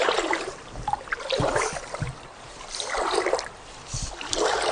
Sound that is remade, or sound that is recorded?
remade